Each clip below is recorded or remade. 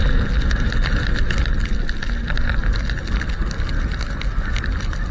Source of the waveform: recorded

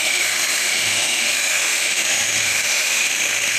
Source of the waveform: remade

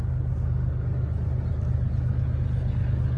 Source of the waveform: recorded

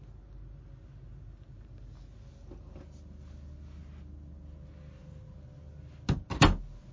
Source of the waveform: recorded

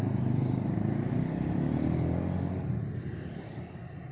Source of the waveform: recorded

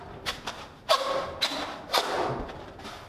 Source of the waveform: recorded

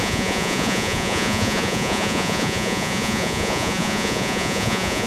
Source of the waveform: remade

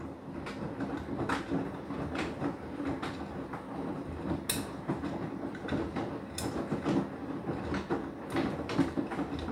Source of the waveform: recorded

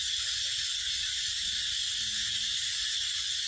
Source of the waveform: recorded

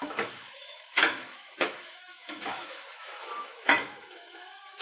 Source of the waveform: remade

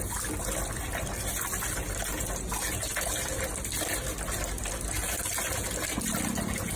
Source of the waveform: recorded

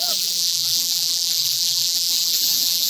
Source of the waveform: remade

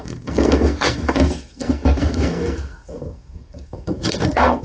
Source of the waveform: remade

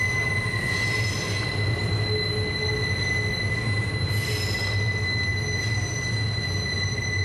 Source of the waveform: recorded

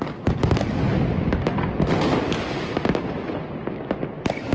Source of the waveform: recorded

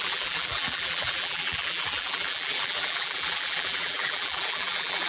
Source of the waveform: remade